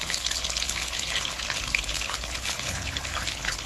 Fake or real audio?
fake